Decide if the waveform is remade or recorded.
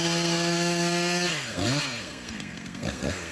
remade